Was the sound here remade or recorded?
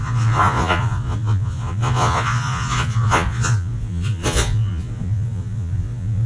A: remade